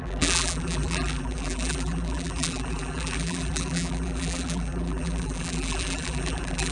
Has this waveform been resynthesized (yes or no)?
yes